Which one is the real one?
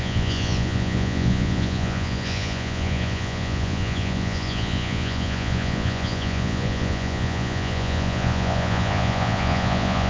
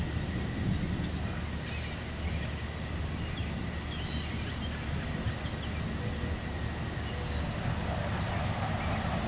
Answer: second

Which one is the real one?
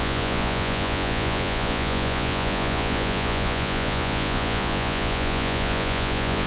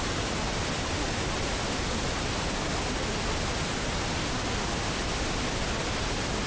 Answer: second